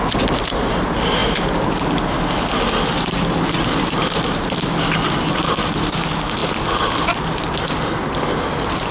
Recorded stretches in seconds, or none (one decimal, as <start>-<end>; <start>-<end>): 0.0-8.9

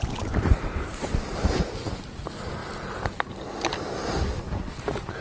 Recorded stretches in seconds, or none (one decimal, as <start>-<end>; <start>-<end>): 0.0-5.2

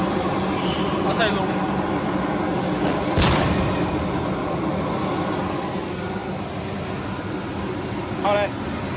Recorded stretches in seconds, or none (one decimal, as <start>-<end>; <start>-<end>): 0.0-9.0